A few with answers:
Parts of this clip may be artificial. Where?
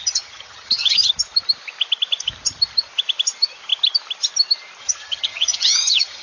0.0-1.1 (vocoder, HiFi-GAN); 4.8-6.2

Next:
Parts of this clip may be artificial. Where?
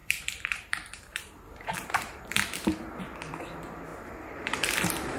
0.0-3.0 (vocoder, BigVGAN v2); 3.9-5.2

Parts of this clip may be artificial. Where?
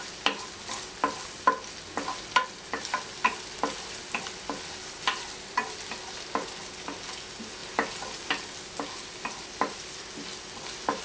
none